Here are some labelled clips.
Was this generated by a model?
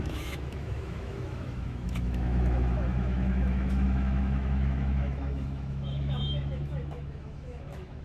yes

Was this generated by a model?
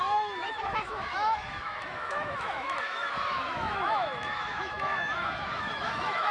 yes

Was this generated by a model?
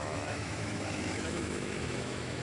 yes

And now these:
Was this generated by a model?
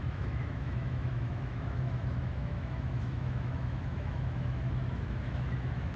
yes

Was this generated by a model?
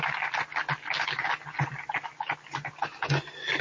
no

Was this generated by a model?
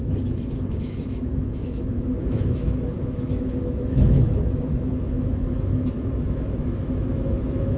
yes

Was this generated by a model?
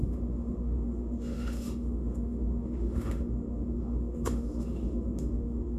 yes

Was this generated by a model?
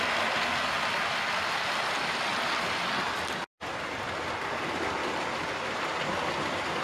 no